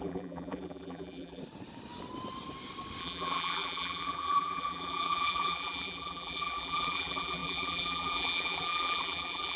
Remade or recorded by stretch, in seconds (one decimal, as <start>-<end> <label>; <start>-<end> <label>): 0.0-1.4 remade; 1.4-3.0 recorded; 3.0-9.6 remade